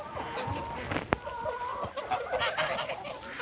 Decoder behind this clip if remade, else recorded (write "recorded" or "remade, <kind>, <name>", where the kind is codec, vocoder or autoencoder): recorded